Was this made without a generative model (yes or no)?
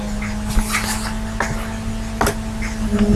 yes